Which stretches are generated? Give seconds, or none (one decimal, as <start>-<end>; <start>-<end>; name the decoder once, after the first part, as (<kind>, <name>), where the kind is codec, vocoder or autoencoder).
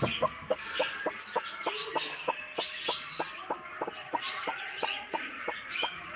4.0-6.2 (vocoder, Vocos)